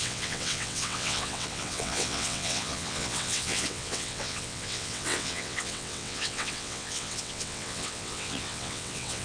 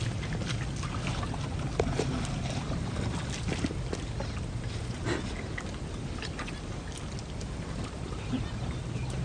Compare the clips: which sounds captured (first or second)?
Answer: second